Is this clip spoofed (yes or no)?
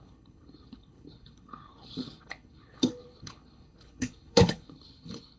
yes